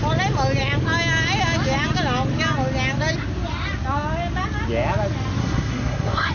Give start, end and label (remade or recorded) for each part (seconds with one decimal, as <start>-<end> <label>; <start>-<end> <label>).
0.0-5.4 recorded; 5.4-6.3 remade